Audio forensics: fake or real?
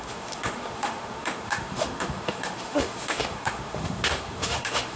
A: fake